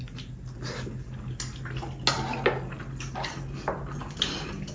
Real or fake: real